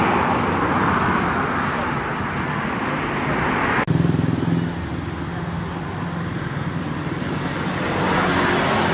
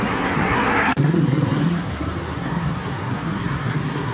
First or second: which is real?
first